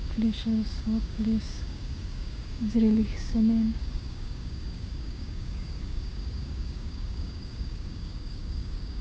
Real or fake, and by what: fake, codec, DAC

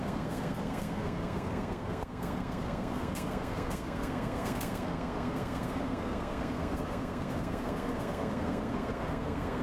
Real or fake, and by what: fake, codec, SNAC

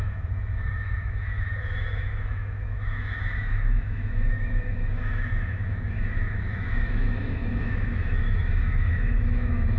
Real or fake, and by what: fake, autoencoder, DAC-VAE